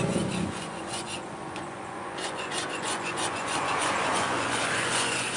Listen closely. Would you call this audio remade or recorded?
remade